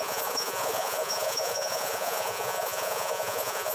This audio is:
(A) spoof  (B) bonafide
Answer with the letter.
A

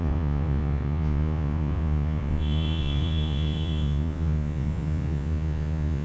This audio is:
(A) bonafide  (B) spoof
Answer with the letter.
B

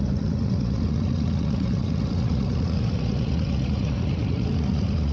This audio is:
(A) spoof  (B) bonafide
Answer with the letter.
A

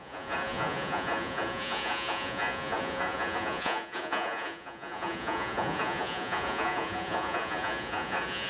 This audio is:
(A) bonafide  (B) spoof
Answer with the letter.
B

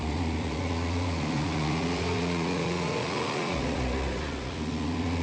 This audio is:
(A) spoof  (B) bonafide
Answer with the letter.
A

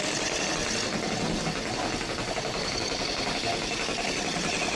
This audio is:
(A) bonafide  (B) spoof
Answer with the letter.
A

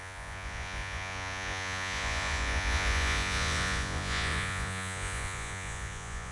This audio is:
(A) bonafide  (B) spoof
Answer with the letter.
B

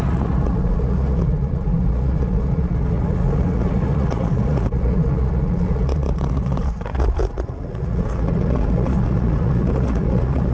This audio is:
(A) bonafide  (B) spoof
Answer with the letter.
B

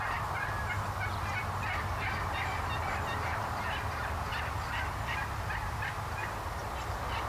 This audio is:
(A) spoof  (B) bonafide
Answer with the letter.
B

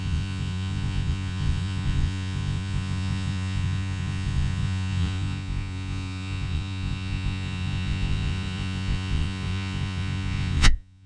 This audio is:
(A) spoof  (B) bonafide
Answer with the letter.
A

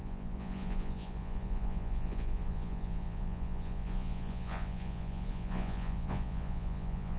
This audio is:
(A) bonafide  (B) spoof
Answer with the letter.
B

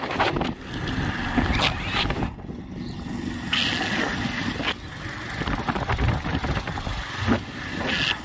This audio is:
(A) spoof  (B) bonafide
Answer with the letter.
B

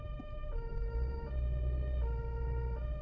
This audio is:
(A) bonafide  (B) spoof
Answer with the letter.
A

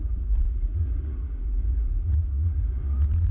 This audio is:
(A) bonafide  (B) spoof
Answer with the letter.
B